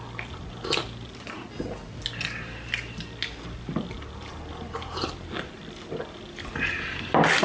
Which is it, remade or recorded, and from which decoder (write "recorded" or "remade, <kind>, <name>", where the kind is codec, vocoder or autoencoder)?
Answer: recorded